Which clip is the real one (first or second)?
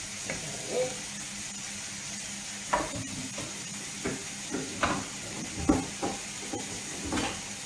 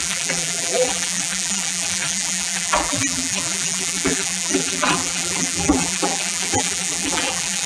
first